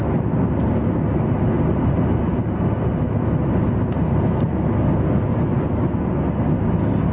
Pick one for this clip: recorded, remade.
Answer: recorded